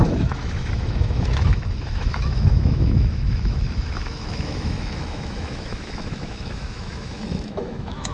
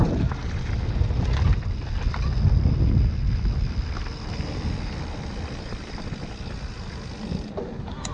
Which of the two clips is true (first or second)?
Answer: second